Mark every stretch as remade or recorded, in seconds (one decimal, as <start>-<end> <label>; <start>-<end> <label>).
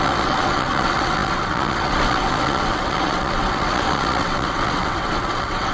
0.0-5.7 remade